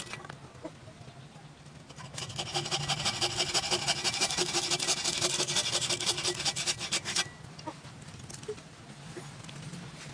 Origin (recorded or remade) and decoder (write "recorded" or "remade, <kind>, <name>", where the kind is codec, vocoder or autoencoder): recorded